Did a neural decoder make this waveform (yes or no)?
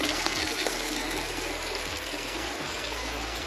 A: yes